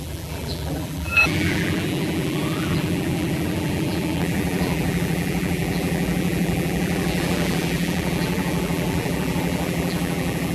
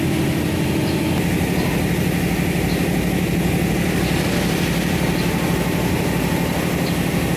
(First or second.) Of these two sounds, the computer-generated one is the first